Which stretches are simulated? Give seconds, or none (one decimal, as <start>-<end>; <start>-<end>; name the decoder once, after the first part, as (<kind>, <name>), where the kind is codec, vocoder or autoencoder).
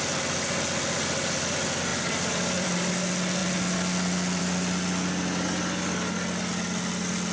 1.9-2.9 (vocoder, BigVGAN v2)